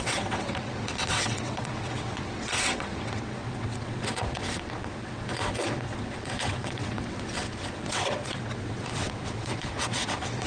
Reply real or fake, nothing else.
fake